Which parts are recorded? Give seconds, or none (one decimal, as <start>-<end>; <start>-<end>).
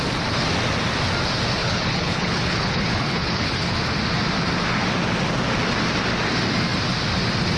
0.0-1.6; 3.8-7.6